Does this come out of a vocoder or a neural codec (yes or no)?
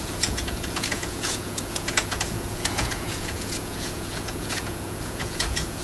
yes